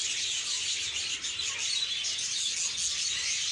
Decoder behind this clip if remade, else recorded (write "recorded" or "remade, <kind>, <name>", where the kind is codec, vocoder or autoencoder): recorded